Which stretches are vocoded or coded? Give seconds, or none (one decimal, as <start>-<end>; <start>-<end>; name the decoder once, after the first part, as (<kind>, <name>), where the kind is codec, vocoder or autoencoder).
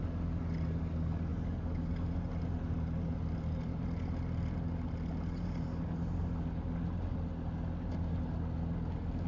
none